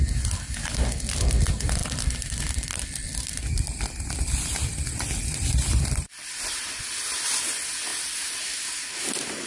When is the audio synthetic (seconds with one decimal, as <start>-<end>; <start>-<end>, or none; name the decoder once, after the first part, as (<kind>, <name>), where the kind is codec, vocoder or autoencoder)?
1.8-6.8 (vocoder, BigVGAN v2); 7.9-8.4